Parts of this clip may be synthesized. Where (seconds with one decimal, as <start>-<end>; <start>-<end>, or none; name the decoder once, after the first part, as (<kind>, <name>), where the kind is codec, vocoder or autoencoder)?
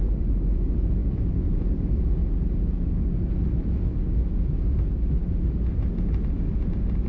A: 0.0-2.2 (vocoder, BigVGAN v2); 4.6-7.1